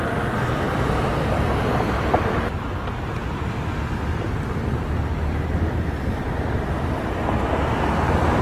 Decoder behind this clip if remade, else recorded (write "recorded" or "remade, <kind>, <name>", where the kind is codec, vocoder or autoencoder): remade, vocoder, BigVGAN v2